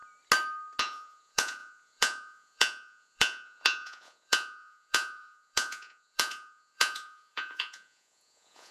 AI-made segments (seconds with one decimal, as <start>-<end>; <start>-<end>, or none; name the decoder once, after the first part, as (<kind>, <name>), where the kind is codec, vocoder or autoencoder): 0.8-8.7 (vocoder, Vocos)